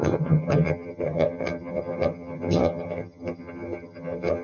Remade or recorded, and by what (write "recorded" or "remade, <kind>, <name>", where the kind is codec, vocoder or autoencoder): remade, vocoder, HiFi-GAN